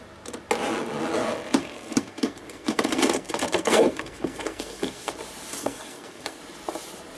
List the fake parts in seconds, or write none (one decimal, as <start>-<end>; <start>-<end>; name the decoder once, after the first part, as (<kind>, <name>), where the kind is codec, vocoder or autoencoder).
1.6-5.1 (codec, SNAC); 5.6-6.4